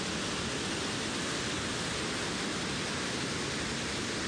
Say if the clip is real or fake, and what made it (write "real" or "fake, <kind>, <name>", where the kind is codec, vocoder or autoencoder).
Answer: real